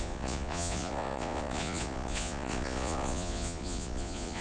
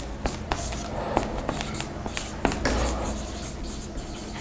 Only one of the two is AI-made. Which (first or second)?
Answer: first